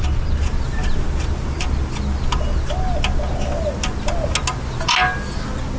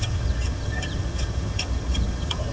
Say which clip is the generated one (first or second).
second